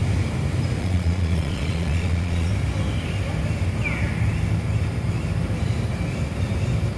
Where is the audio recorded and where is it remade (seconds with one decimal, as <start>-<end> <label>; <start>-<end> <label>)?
0.0-0.8 recorded; 0.8-2.5 remade; 2.5-7.0 recorded